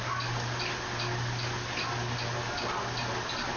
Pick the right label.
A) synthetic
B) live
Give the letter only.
B